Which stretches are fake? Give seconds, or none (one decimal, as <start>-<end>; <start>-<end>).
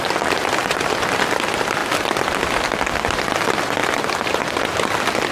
0.0-1.8; 3.3-5.3